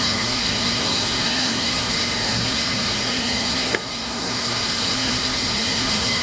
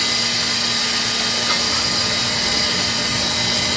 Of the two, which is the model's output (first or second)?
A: first